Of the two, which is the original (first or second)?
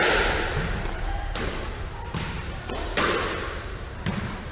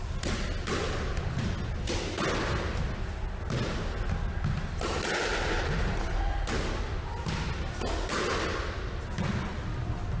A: second